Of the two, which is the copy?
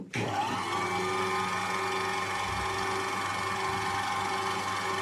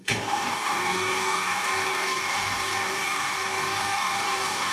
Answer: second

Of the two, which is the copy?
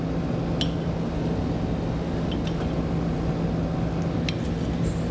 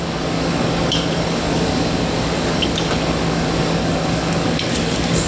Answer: second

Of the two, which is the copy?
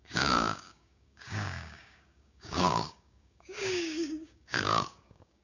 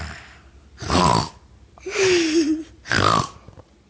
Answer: first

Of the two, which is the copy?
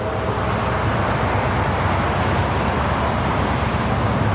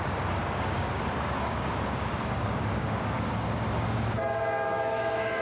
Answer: second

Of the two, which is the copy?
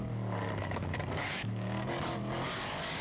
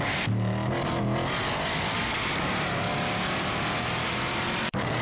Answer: first